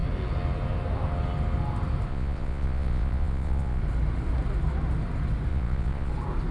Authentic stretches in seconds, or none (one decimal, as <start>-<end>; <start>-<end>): 0.0-2.1; 3.8-5.5; 6.1-6.5